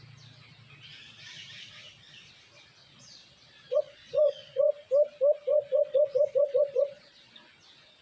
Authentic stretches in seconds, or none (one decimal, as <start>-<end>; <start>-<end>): 0.0-2.8; 4.7-5.5; 7.3-8.0

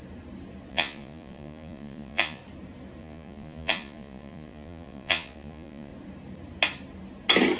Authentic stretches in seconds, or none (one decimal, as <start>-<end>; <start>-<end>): 0.0-0.7; 2.4-3.0; 5.9-7.6

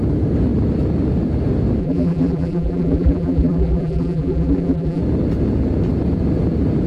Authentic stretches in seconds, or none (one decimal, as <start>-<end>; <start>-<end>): 0.0-1.8; 5.0-6.9

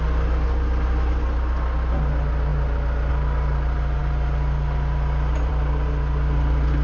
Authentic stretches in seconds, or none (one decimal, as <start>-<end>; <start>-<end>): 0.0-6.8